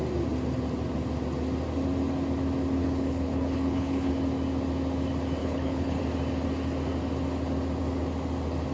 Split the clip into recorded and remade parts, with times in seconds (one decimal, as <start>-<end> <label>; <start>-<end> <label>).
0.0-2.8 recorded; 2.8-4.1 remade; 4.1-5.4 recorded; 5.4-6.0 remade; 6.0-8.7 recorded